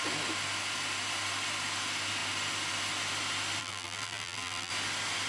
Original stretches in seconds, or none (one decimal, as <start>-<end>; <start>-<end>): 0.0-3.6; 4.7-5.3